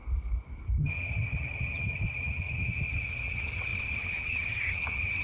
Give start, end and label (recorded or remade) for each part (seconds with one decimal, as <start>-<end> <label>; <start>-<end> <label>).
0.0-0.8 recorded; 0.8-5.2 remade

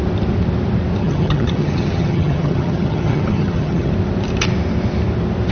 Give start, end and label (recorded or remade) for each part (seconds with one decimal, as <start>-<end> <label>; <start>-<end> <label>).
0.0-1.0 recorded; 1.0-3.9 remade; 3.9-5.5 recorded

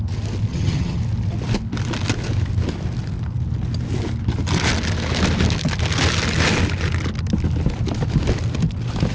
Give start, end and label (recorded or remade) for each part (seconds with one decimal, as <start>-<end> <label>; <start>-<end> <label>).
0.0-0.5 recorded; 0.5-1.0 remade; 1.0-9.1 recorded

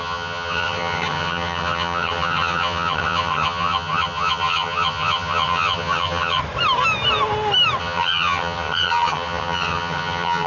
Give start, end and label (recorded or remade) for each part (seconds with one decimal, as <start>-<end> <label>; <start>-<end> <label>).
0.0-6.4 remade; 6.4-7.8 recorded; 7.8-10.5 remade

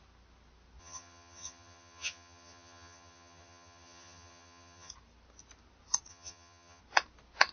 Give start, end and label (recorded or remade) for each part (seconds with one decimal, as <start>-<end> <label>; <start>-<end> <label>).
0.0-0.8 recorded; 0.8-4.9 remade; 4.9-6.1 recorded; 6.1-6.8 remade; 6.8-7.5 recorded